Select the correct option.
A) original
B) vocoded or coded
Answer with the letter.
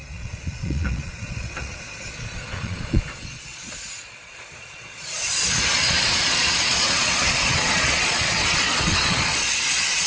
B